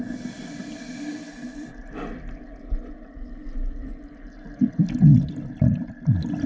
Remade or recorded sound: recorded